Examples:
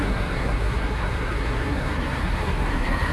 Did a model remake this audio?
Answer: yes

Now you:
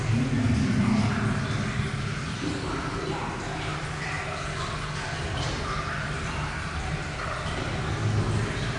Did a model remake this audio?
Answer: no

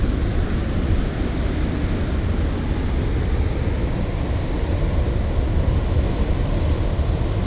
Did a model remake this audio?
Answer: no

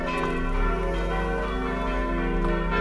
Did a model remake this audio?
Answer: no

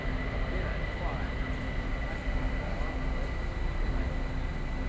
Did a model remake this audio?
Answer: no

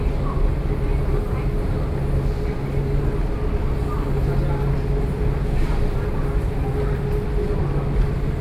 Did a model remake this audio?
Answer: no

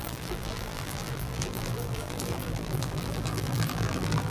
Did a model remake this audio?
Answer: yes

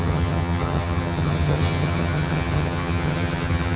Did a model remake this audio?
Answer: yes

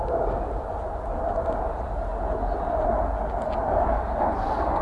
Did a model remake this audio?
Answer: no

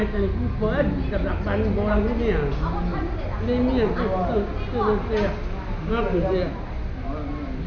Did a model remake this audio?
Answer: no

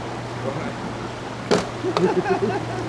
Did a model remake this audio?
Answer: no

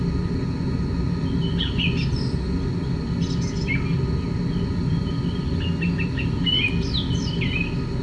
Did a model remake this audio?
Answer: no